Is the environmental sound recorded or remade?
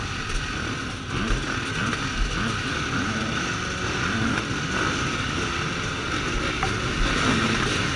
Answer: recorded